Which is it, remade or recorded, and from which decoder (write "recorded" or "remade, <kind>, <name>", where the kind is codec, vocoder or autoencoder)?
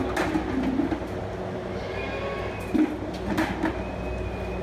recorded